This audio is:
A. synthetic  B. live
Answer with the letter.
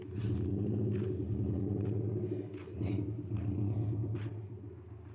B